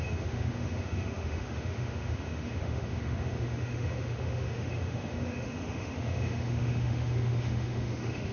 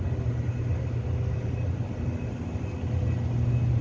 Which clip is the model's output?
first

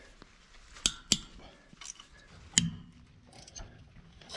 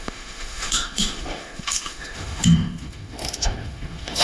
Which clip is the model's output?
second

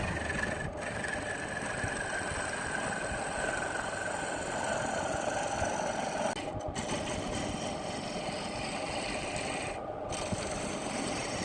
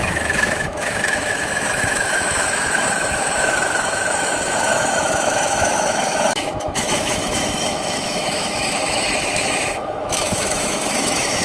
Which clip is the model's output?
second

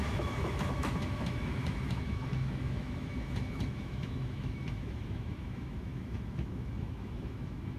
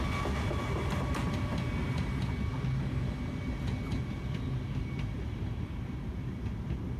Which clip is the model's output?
first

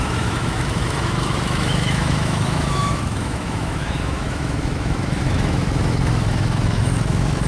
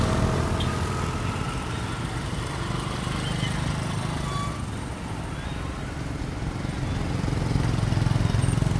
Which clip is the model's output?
first